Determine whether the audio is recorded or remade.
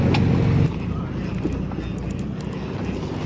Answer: recorded